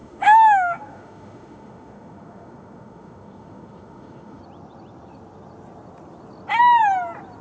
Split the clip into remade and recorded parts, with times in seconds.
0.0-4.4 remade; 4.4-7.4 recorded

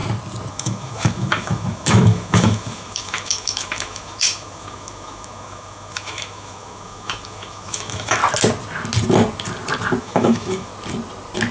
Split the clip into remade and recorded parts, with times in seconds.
0.0-0.5 recorded; 0.5-8.2 remade; 8.2-10.0 recorded; 10.0-10.7 remade; 10.7-11.5 recorded

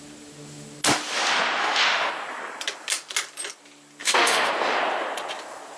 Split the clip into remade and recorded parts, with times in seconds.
0.0-1.6 recorded; 1.6-2.1 remade; 2.1-4.0 recorded; 4.0-4.5 remade; 4.5-5.8 recorded